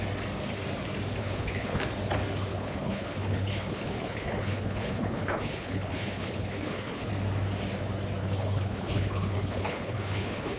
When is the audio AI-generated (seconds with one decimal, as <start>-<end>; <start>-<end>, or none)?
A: 1.2-1.8; 2.5-7.1; 8.2-10.6